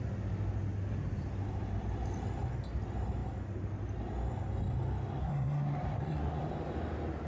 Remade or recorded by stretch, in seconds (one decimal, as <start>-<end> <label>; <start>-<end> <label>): 0.0-5.2 recorded; 5.2-6.4 remade; 6.4-7.3 recorded